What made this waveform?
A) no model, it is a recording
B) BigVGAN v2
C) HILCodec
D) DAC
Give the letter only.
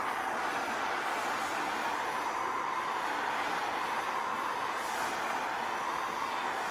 A